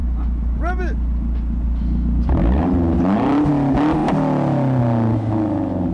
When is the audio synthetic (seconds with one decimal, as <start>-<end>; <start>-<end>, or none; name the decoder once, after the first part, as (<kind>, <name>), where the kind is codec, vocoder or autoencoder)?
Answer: none